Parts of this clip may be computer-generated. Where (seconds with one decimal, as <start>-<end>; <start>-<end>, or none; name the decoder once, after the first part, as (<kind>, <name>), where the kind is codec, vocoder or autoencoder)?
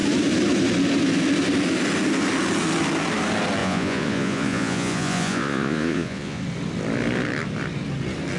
3.6-6.4 (vocoder, Vocos)